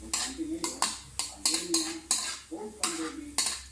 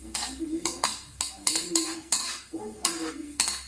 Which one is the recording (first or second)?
first